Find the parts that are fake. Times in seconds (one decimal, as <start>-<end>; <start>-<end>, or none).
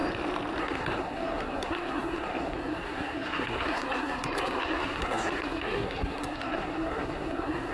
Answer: 0.6-7.7